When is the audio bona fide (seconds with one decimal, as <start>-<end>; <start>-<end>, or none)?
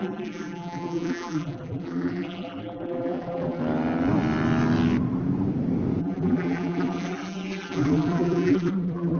3.6-6.0